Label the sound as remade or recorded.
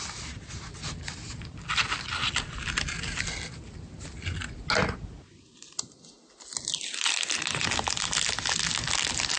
recorded